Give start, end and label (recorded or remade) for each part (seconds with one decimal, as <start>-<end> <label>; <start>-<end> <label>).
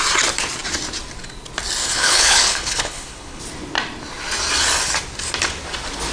0.0-1.8 recorded; 1.8-3.4 remade; 3.4-6.1 recorded